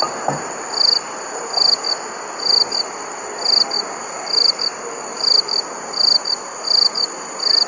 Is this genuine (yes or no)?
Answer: yes